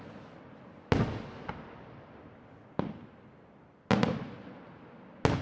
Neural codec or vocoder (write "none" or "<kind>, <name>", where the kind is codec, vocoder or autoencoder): none